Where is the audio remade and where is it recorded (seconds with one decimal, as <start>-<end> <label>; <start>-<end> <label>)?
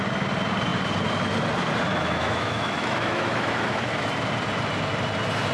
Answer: 0.0-1.9 recorded; 1.9-4.1 remade; 4.1-5.5 recorded